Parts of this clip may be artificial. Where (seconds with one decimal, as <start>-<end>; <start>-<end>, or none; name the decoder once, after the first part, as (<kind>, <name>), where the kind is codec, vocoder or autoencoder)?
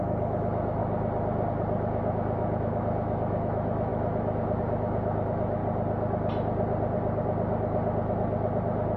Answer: 0.0-0.8 (autoencoder, DAC-VAE); 1.5-5.6